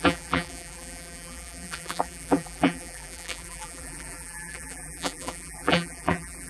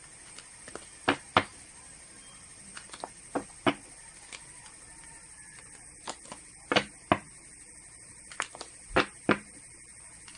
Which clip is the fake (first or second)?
first